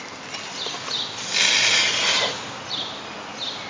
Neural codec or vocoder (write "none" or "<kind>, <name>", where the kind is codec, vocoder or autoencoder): none